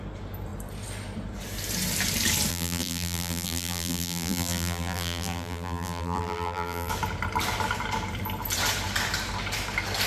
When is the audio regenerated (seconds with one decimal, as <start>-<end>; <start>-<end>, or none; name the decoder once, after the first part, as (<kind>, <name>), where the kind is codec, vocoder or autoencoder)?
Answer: 2.5-6.9 (vocoder, BigVGAN v2)